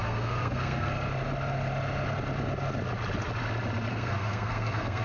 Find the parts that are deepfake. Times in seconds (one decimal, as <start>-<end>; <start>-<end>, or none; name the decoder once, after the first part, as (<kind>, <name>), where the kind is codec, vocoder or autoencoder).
0.0-0.9 (codec, SNAC); 3.9-5.0